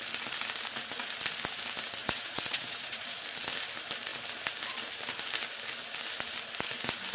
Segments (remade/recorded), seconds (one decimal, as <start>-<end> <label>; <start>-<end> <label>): 0.0-2.0 recorded; 2.0-3.2 remade; 3.2-7.1 recorded